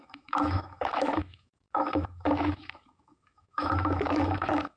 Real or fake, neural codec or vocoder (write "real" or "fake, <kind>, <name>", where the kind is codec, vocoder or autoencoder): fake, autoencoder, DAC-VAE